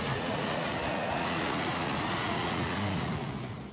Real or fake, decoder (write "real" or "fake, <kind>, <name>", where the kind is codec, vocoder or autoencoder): fake, vocoder, Vocos